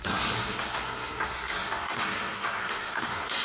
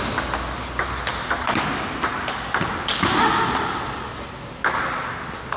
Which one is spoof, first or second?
first